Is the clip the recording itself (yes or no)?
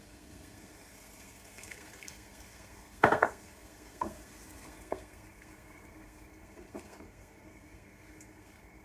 no